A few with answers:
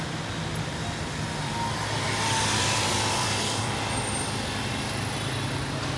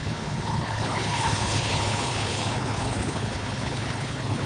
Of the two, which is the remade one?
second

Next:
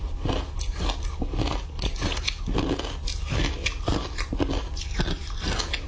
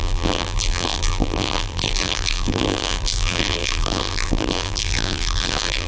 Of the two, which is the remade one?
second